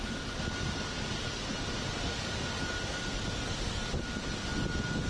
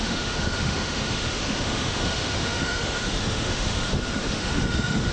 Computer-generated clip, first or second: second